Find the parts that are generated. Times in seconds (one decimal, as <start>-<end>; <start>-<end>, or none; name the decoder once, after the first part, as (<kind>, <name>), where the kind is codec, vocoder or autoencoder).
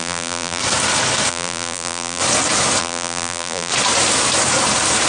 0.0-0.6 (vocoder, BigVGAN v2); 1.3-2.2; 2.8-3.7